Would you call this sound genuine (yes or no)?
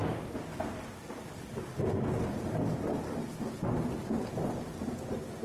yes